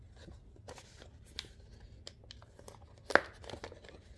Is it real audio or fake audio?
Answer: real